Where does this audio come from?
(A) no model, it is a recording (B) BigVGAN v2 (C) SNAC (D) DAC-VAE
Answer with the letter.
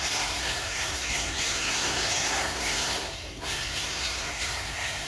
C